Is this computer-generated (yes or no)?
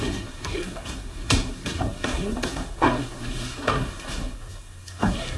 yes